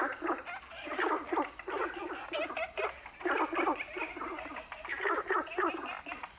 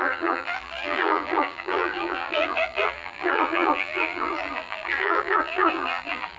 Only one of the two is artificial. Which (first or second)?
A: second